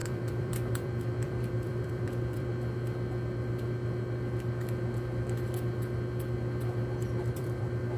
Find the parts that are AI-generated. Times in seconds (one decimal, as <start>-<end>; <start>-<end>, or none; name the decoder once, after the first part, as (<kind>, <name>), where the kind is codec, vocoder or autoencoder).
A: 0.0-2.5 (vocoder, BigVGAN v2); 7.3-8.0